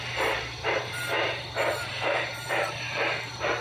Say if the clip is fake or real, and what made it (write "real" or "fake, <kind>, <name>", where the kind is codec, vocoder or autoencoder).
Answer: fake, vocoder, BigVGAN v2